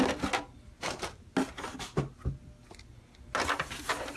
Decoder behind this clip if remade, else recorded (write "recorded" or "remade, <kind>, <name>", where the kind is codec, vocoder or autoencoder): recorded